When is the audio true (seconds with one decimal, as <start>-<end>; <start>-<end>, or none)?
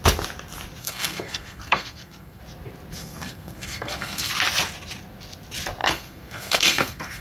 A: 0.0-0.8; 2.4-3.0; 4.3-5.8